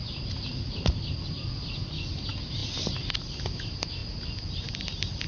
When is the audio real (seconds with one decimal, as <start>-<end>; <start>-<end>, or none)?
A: 0.0-5.3